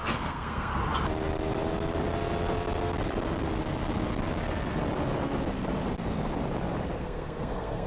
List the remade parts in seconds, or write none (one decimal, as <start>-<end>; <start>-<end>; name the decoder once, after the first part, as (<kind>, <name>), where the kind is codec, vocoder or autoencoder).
0.0-0.8 (codec, SNAC); 7.0-7.9